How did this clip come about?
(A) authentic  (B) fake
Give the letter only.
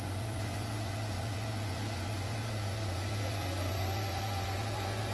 B